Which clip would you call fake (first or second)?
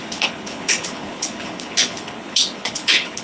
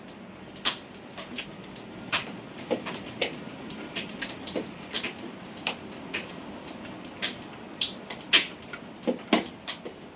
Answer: first